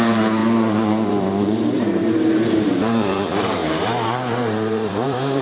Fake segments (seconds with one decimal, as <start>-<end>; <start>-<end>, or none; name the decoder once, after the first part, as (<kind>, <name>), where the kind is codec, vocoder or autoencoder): 0.0-5.4 (vocoder, BigVGAN v2)